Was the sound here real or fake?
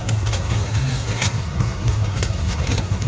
fake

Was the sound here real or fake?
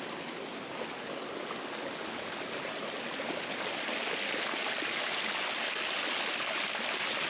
real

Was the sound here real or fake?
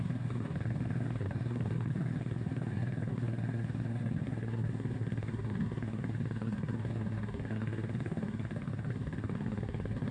fake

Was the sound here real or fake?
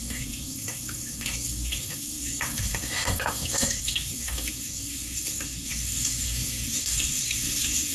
fake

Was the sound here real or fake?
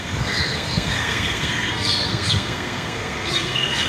fake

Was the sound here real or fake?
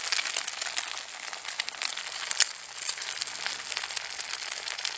real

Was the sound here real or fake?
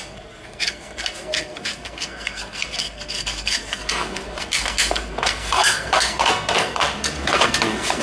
fake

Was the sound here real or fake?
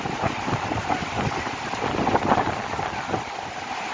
real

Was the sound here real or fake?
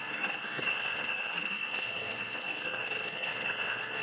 fake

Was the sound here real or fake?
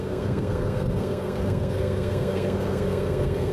fake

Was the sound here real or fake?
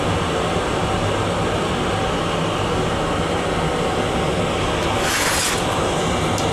real